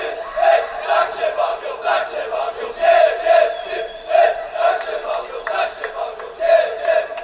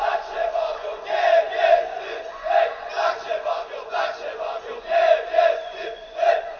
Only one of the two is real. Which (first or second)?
first